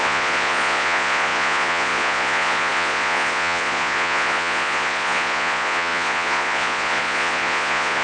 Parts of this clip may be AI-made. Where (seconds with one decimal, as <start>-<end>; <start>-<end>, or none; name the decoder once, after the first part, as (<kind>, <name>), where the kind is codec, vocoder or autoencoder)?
0.0-8.0 (vocoder, Vocos)